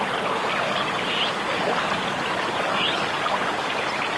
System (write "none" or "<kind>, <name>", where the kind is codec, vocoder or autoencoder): none